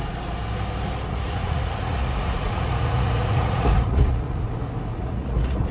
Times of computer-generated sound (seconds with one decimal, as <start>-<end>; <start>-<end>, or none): 1.1-4.5; 4.9-5.7